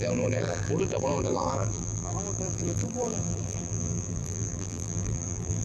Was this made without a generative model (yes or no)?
no